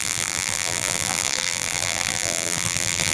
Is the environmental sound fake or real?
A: fake